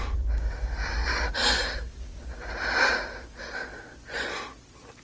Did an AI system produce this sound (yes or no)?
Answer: no